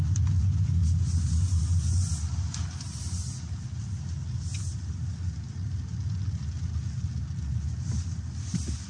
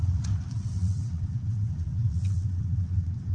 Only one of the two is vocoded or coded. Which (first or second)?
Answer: second